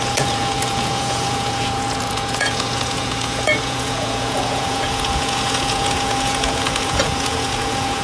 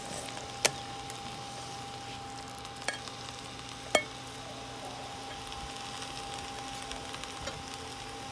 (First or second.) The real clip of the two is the second